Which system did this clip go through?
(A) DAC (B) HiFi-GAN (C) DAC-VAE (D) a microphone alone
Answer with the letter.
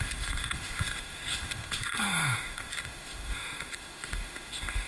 C